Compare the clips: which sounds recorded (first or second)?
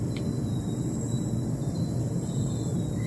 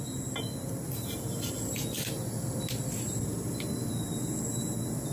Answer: second